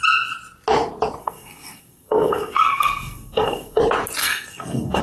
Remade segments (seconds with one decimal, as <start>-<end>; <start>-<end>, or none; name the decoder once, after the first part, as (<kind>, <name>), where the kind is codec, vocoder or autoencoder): 1.2-3.8 (codec, SNAC); 4.2-5.0